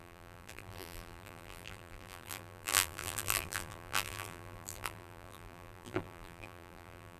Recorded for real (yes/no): no